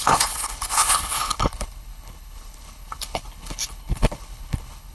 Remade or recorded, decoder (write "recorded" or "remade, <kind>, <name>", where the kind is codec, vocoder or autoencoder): remade, codec, HILCodec